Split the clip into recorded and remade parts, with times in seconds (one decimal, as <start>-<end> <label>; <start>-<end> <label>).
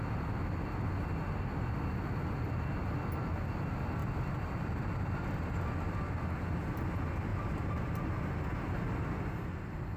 0.0-7.3 recorded; 7.3-8.8 remade; 8.8-10.0 recorded